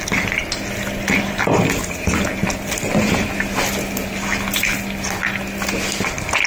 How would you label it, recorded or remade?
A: recorded